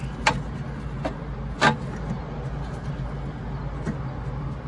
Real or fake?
real